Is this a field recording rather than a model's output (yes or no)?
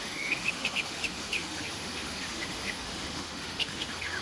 no